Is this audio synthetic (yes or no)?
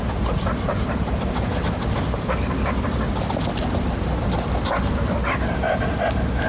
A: no